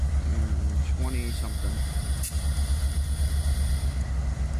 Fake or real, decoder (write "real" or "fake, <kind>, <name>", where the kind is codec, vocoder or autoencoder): real